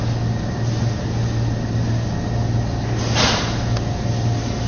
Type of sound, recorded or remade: recorded